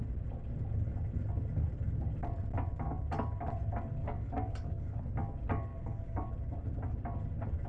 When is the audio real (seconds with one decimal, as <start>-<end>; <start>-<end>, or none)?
0.0-4.0; 5.0-5.7; 6.3-7.7